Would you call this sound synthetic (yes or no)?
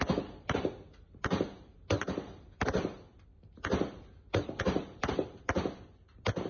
no